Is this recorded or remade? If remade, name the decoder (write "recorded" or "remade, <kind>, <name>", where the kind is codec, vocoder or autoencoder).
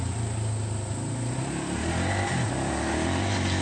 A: recorded